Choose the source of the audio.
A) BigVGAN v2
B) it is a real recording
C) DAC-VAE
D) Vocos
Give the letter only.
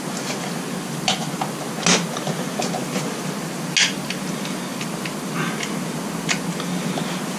B